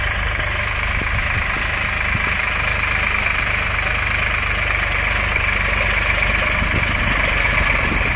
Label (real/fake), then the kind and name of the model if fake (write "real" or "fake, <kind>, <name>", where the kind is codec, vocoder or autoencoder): real